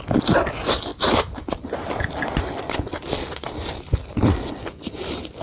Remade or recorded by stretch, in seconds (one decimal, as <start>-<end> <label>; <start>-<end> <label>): 0.0-5.4 recorded